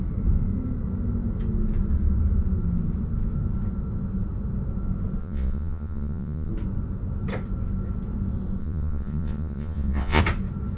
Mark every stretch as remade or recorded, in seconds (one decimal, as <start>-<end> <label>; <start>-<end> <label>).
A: 0.0-5.2 recorded; 5.2-6.5 remade; 6.5-8.6 recorded; 8.6-10.2 remade; 10.2-10.8 recorded